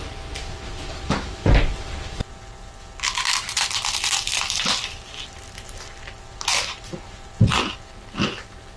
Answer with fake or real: real